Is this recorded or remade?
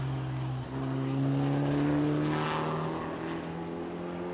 recorded